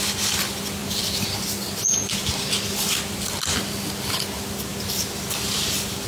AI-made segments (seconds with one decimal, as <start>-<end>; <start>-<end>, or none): none